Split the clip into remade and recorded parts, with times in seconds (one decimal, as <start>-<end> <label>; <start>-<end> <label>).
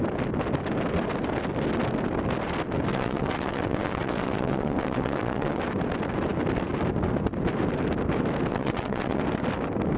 0.0-2.9 recorded; 2.9-5.6 remade; 5.6-8.5 recorded; 8.5-9.2 remade; 9.2-10.0 recorded